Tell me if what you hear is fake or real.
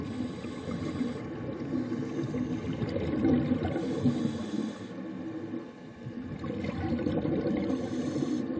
real